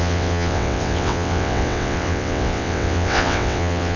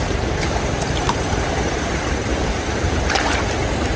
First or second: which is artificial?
first